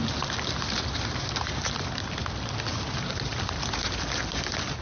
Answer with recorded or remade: recorded